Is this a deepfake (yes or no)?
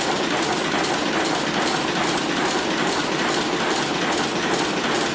no